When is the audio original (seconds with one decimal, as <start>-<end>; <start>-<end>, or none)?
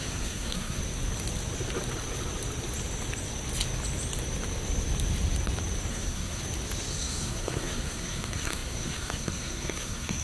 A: 0.8-5.9; 6.4-6.9